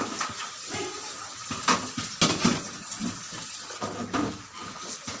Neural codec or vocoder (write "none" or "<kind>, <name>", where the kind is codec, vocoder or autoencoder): none